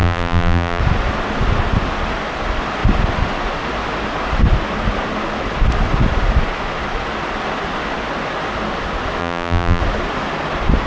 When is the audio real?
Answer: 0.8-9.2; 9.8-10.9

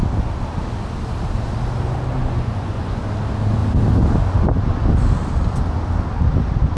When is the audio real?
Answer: 0.0-2.2; 3.0-6.8

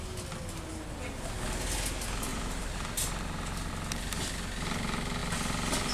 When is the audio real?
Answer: 0.0-2.3; 3.7-5.9

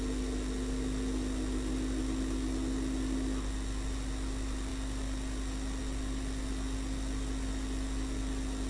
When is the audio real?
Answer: 0.0-8.7

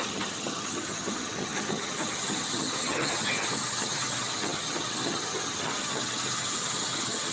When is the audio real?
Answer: none

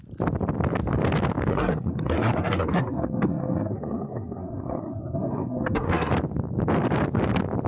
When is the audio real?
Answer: 0.0-1.5; 6.1-7.7

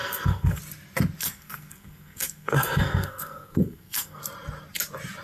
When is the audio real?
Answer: 0.6-1.2; 4.2-5.2